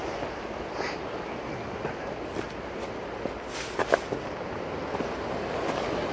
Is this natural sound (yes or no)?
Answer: yes